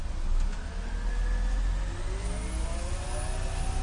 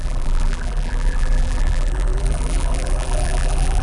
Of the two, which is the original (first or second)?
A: first